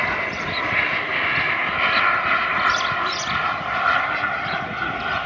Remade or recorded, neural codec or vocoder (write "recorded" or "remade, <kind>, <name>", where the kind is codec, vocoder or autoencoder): recorded